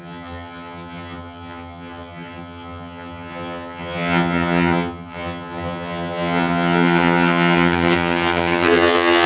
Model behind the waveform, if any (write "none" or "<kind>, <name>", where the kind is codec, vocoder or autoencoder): vocoder, HiFi-GAN